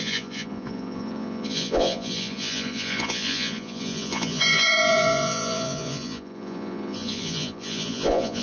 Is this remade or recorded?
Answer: remade